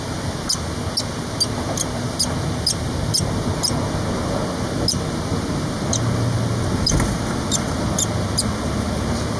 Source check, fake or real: real